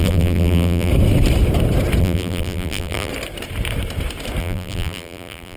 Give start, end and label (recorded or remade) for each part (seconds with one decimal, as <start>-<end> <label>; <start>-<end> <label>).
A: 0.0-0.9 remade; 0.9-2.0 recorded; 2.0-3.1 remade; 3.1-4.4 recorded; 4.4-5.6 remade